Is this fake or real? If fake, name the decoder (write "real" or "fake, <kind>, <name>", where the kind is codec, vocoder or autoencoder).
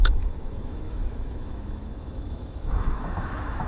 fake, autoencoder, DAC-VAE